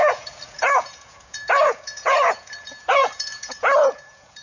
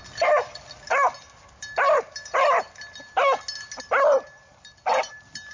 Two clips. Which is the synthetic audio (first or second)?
first